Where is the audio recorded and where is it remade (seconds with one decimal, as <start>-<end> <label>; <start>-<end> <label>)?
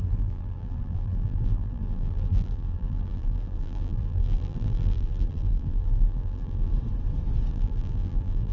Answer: 0.0-6.7 remade; 6.7-7.5 recorded; 7.5-8.5 remade